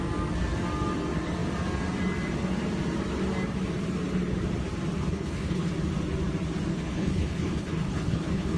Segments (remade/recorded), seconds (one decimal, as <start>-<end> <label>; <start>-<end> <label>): 0.0-5.0 recorded; 5.0-5.7 remade; 5.7-6.7 recorded; 6.7-8.6 remade